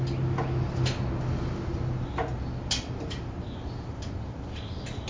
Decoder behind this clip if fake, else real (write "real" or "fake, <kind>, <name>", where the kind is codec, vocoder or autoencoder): real